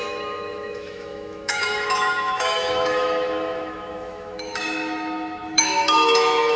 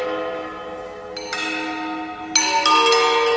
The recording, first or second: second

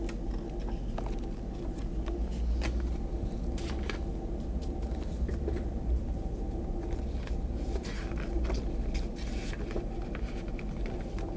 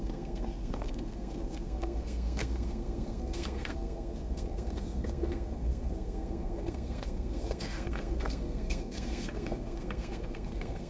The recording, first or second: first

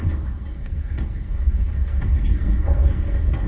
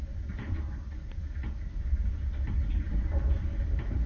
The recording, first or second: second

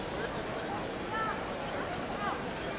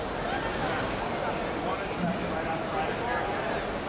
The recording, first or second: second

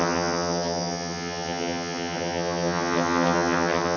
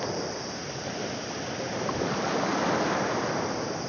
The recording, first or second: second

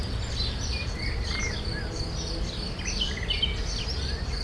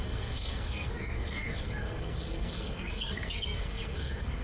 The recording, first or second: first